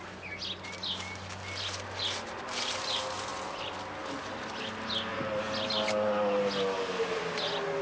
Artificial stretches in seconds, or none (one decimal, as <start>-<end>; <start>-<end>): none